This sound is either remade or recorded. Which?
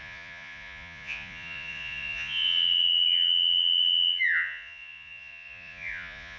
remade